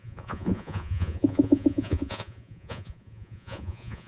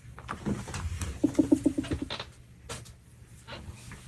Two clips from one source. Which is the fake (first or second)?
first